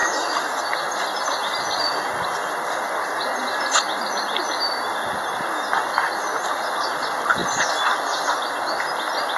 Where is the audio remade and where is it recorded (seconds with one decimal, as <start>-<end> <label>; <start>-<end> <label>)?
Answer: 0.0-0.6 remade; 0.6-9.4 recorded